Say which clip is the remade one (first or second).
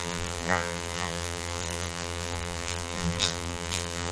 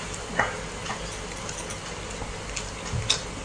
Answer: first